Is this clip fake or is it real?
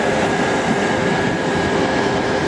real